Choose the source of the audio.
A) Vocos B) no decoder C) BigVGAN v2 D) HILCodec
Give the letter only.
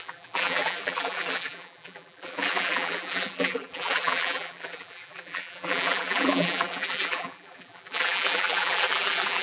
C